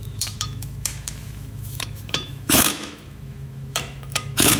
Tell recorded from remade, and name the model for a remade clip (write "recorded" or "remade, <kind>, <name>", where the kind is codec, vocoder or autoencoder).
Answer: remade, autoencoder, DAC-VAE